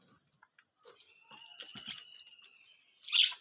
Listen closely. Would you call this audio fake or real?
real